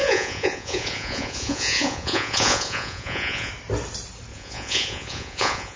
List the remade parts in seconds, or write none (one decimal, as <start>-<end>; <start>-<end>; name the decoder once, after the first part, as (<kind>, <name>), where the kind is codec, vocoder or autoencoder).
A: 0.0-3.5 (vocoder, Vocos); 4.3-5.8